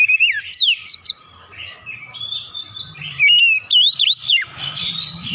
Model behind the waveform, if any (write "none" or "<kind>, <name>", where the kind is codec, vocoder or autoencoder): vocoder, BigVGAN v2